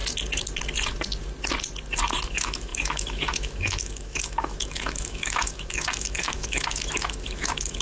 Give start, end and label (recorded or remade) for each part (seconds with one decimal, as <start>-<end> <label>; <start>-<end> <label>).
0.0-2.3 recorded; 2.3-7.8 remade